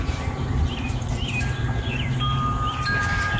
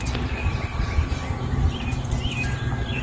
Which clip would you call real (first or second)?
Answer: second